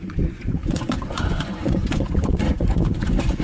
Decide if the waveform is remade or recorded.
remade